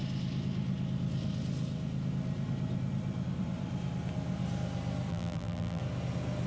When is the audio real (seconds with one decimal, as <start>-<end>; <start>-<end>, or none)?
0.0-5.1; 5.8-6.5